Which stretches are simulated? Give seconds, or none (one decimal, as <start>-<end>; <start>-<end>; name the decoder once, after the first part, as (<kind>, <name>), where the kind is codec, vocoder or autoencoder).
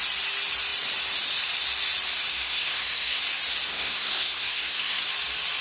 2.3-3.2 (codec, SNAC); 3.7-5.0